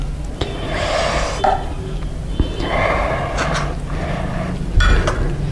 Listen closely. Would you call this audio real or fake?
real